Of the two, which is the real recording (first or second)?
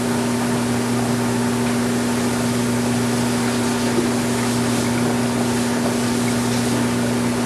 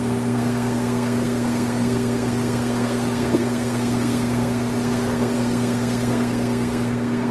first